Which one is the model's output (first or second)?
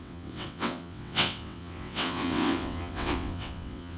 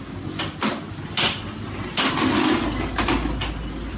first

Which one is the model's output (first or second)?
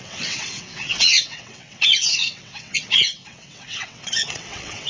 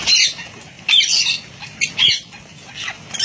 first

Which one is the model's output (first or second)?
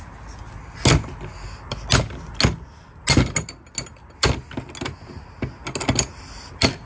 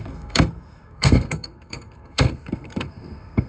second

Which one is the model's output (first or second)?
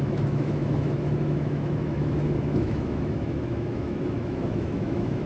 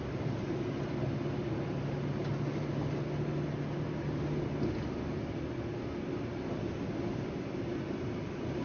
first